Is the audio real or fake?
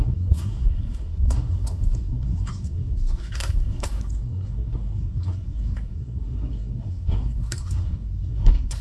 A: fake